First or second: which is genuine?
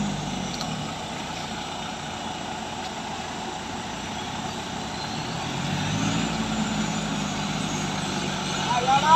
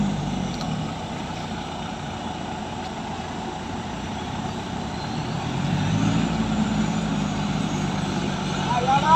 first